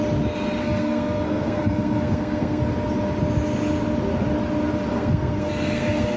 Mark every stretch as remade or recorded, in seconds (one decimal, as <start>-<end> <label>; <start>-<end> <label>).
0.0-0.6 recorded; 0.6-2.6 remade; 2.6-4.9 recorded; 4.9-6.2 remade

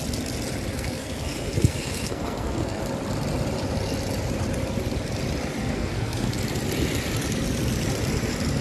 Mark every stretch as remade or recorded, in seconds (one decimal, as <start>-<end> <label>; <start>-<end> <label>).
0.0-0.7 recorded; 0.7-2.8 remade; 2.8-5.6 recorded; 5.6-6.3 remade; 6.3-8.6 recorded

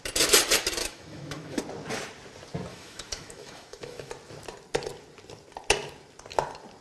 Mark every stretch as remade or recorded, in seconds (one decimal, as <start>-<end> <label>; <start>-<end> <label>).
0.0-0.8 recorded; 0.8-1.6 remade; 1.6-2.7 recorded; 2.7-4.1 remade; 4.1-6.8 recorded

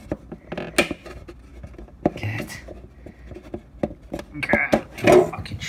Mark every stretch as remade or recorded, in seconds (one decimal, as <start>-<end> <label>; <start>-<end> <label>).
0.0-5.7 recorded

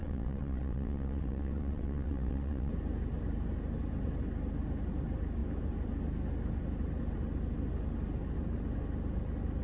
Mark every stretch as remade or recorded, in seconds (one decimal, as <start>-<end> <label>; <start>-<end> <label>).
0.0-2.7 remade; 2.7-9.6 recorded

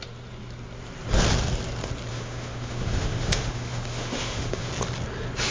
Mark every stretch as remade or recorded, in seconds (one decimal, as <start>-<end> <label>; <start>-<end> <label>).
0.0-2.1 recorded; 2.1-4.7 remade; 4.7-5.5 recorded

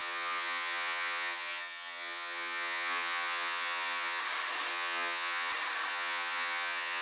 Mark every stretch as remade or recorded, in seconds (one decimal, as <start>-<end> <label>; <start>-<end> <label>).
0.0-4.2 remade; 4.2-4.7 recorded; 4.7-5.5 remade; 5.5-5.9 recorded; 5.9-7.0 remade